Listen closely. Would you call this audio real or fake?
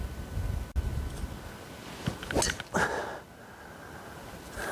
real